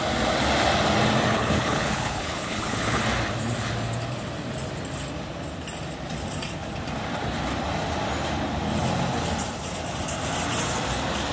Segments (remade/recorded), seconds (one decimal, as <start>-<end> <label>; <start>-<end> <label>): 0.0-1.3 recorded; 1.3-3.0 remade; 3.0-11.3 recorded